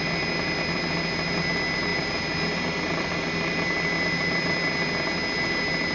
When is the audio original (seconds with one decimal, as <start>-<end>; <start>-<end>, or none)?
0.0-5.9